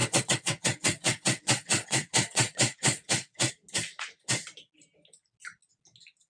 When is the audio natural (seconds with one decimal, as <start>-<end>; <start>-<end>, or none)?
3.5-6.3